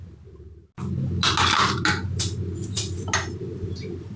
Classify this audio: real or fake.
real